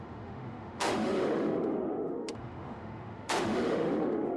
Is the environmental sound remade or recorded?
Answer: remade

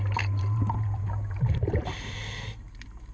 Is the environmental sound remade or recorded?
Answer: remade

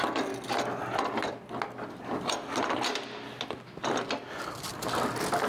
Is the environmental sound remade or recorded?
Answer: recorded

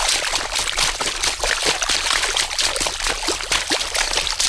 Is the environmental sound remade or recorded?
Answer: remade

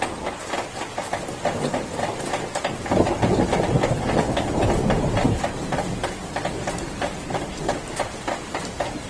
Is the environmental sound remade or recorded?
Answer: recorded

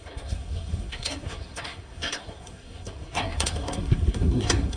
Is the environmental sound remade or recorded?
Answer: remade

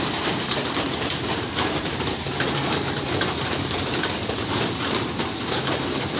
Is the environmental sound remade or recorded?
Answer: remade